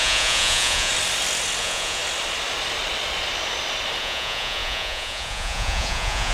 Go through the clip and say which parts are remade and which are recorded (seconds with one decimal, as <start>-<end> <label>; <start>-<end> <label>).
0.0-0.9 remade; 0.9-1.6 recorded; 1.6-2.0 remade; 2.0-4.0 recorded; 4.0-6.3 remade